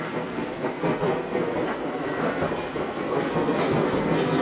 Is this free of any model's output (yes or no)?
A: no